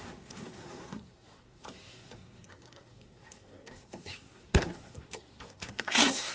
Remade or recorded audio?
remade